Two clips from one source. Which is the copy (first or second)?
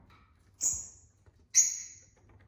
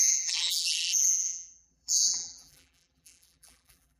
second